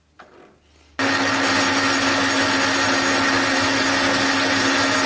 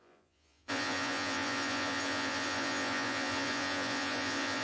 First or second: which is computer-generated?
second